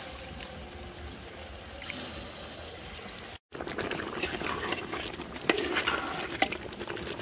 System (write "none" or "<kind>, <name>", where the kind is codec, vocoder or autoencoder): none